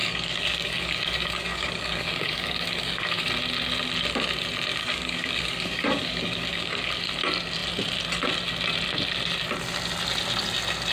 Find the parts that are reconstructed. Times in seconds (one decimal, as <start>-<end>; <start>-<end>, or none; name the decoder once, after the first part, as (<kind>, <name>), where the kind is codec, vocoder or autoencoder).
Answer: 0.0-3.3 (codec, DAC); 4.8-6.9